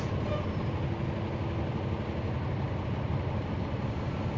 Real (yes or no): yes